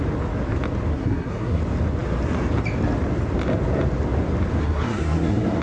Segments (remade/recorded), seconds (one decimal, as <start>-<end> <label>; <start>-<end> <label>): 0.0-0.9 recorded; 0.9-1.6 remade; 1.6-4.6 recorded; 4.6-5.6 remade